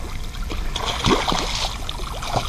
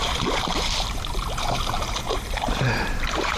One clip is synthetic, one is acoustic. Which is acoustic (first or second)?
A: first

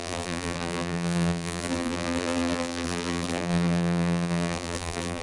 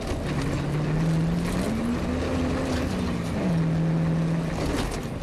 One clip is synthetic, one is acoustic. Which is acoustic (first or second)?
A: second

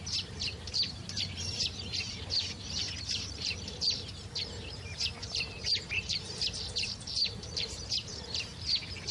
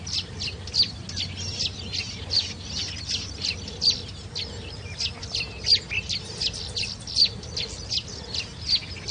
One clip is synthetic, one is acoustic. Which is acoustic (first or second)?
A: second